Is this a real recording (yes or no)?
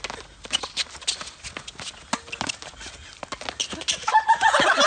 yes